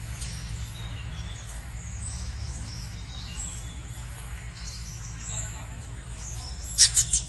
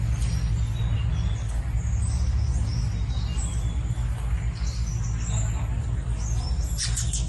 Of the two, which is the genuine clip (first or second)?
second